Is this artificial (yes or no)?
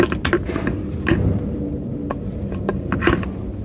no